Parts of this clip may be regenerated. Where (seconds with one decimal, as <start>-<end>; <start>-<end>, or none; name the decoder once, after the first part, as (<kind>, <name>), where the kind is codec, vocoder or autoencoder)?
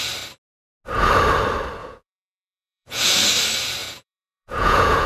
1.8-3.1 (vocoder, Vocos); 3.8-5.1